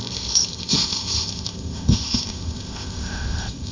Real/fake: fake